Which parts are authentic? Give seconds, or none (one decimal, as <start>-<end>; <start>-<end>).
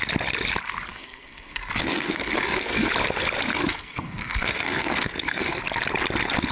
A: 0.0-0.9; 2.9-3.5; 5.6-6.5